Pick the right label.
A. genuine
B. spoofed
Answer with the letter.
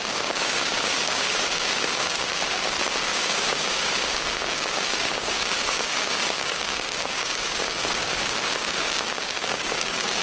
B